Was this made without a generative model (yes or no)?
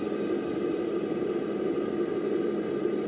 yes